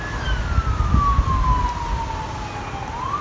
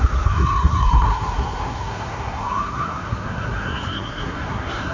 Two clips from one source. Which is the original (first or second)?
first